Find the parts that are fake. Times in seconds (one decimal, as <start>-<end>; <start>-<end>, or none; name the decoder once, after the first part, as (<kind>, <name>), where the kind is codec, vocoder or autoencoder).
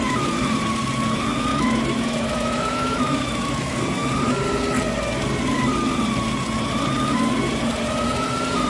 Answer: 1.5-3.6 (autoencoder, DAC-VAE)